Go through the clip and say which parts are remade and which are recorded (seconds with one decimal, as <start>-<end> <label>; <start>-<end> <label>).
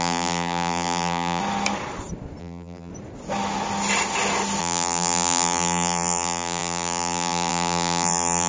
0.0-1.4 remade; 1.4-2.4 recorded; 2.4-2.9 remade; 2.9-4.6 recorded; 4.6-8.5 remade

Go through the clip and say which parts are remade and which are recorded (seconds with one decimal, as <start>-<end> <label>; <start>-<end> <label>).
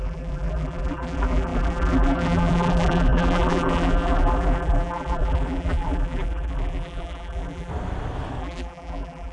0.0-7.7 remade; 7.7-8.4 recorded; 8.4-9.3 remade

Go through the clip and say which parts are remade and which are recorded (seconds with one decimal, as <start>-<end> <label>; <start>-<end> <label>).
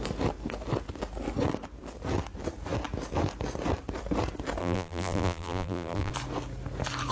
0.0-4.6 recorded; 4.6-6.1 remade; 6.1-7.1 recorded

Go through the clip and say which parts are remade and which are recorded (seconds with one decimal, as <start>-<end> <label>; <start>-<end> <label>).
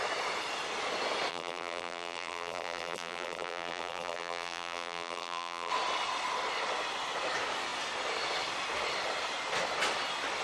0.0-1.3 recorded; 1.3-5.7 remade; 5.7-10.4 recorded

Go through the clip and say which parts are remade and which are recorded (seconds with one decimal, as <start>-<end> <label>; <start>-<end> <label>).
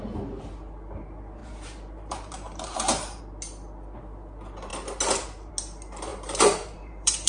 0.0-1.4 recorded; 1.4-3.2 remade; 3.2-6.1 recorded; 6.1-7.3 remade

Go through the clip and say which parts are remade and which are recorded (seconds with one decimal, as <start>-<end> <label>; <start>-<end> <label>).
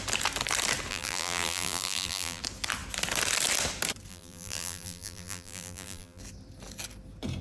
0.0-0.9 recorded; 0.9-2.4 remade; 2.4-4.1 recorded; 4.1-6.2 remade; 6.2-7.4 recorded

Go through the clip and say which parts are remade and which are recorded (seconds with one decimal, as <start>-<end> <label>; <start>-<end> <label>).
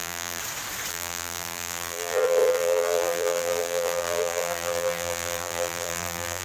0.0-0.4 remade; 0.4-0.9 recorded; 0.9-6.4 remade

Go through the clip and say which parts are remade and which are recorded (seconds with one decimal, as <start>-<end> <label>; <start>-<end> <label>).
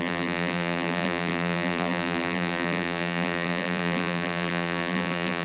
0.0-5.4 remade